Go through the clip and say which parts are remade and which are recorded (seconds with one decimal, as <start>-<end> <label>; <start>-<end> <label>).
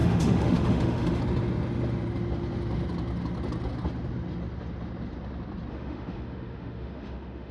0.0-1.2 remade; 1.2-5.7 recorded; 5.7-7.5 remade